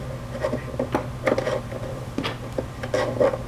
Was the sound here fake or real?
real